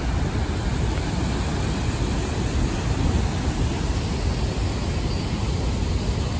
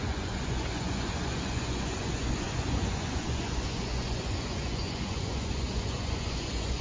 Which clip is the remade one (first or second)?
second